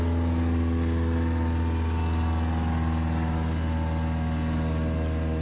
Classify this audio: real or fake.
real